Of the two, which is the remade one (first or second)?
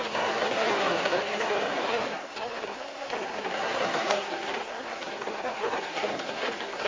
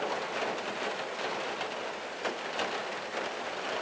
first